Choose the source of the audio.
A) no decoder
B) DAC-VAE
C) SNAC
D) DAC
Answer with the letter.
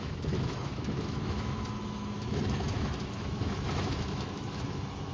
B